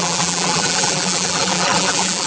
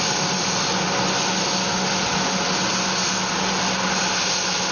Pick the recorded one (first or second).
second